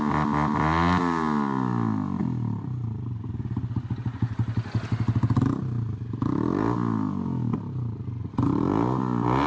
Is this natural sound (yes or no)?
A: yes